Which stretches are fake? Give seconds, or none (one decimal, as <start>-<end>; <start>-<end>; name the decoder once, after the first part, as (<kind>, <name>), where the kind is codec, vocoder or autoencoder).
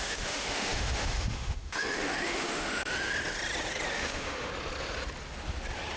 0.0-2.9 (autoencoder, DAC-VAE); 3.9-4.5